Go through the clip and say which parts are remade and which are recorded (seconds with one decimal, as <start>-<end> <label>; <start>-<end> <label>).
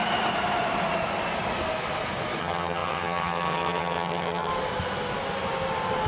0.0-2.4 recorded; 2.4-4.5 remade; 4.5-6.1 recorded